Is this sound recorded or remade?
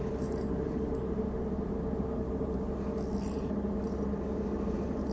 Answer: recorded